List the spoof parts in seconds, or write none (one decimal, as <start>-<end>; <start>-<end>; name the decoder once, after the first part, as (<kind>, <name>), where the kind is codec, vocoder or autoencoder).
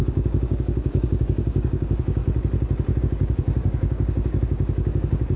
0.0-2.2 (codec, DAC); 3.0-5.4